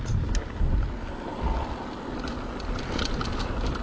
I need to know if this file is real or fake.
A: real